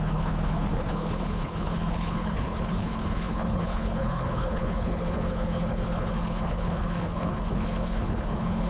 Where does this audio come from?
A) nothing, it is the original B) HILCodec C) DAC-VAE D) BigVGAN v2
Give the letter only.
B